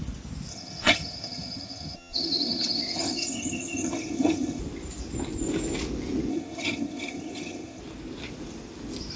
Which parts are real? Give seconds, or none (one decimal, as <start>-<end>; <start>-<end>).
0.0-0.5; 4.6-6.3; 7.8-9.2